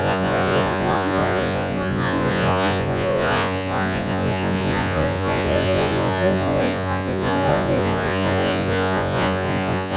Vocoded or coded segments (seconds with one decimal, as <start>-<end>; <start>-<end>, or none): 0.0-10.0